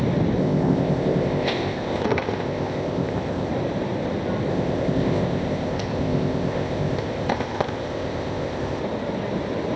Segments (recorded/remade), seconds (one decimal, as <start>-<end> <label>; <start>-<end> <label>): 0.0-0.4 recorded; 0.4-3.5 remade; 3.5-4.5 recorded; 4.5-8.8 remade; 8.8-9.8 recorded